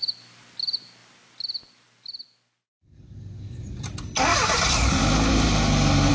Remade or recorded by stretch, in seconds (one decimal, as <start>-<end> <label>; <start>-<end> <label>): 0.0-6.1 recorded